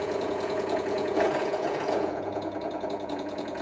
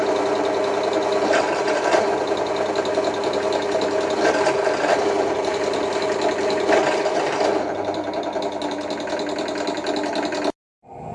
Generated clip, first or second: first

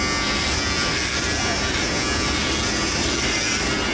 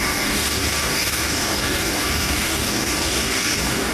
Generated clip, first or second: second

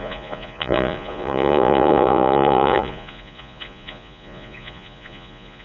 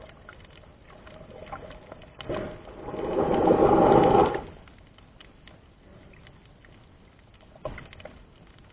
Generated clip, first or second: first